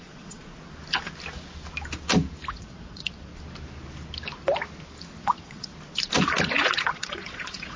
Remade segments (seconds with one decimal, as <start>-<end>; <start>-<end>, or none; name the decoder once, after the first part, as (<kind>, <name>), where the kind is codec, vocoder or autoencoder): 0.0-0.5 (vocoder, Vocos); 2.5-3.3; 5.2-5.7; 6.5-7.8